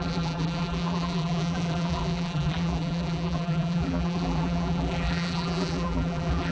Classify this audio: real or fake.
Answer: fake